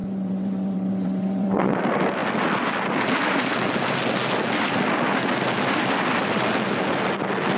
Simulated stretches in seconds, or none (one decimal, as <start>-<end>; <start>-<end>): 0.0-1.8